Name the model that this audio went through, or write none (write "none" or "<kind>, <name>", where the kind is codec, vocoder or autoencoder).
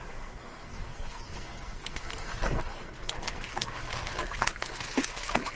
codec, SNAC